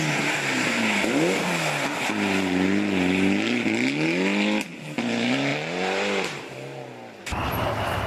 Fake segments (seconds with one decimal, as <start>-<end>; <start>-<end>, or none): none